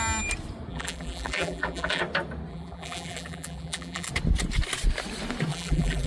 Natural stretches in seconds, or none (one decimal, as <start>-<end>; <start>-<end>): 0.0-0.7; 2.0-2.5; 4.1-5.5

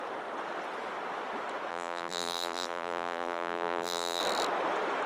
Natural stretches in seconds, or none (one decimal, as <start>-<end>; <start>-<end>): 0.0-1.7; 4.2-5.1